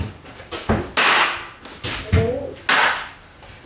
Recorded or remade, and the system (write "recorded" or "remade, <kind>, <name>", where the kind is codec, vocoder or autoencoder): recorded